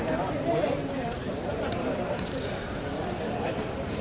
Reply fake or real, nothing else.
fake